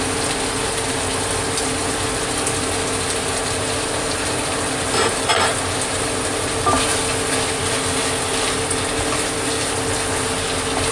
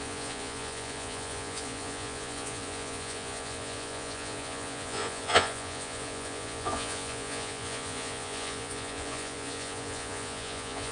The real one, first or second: first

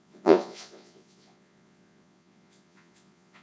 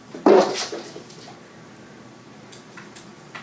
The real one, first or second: second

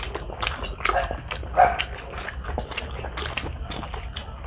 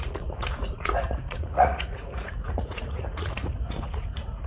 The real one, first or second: first